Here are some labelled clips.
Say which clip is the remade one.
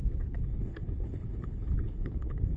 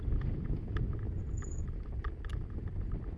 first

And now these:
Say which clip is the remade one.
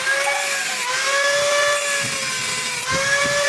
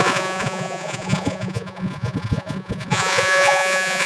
second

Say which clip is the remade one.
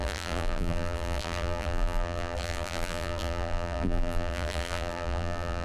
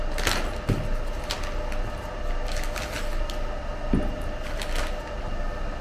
first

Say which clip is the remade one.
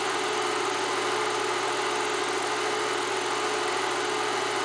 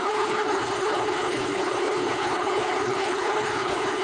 second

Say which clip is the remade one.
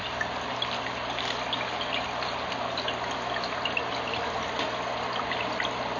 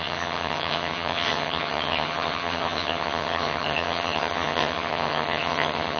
second